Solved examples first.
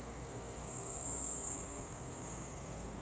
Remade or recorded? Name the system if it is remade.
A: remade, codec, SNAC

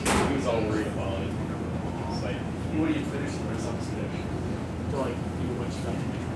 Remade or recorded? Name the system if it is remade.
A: recorded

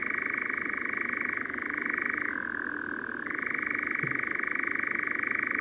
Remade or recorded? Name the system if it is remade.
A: recorded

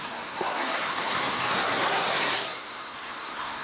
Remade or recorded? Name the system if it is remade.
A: remade, codec, SNAC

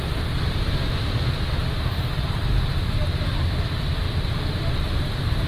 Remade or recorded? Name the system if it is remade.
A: recorded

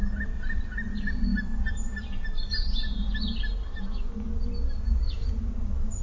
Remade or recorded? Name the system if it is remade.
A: recorded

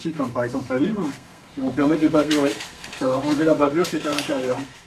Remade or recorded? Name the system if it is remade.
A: remade, codec, SNAC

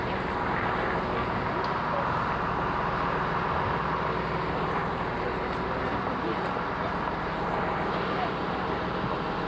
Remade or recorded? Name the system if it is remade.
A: recorded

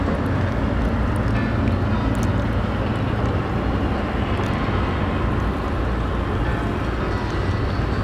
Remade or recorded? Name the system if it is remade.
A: recorded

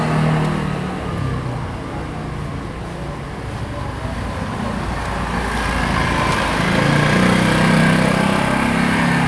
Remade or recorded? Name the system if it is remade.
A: recorded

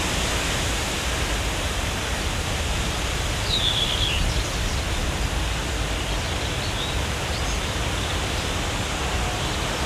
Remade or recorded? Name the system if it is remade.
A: recorded